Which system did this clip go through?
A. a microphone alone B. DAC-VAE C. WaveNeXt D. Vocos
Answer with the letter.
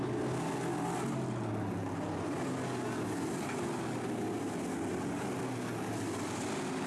A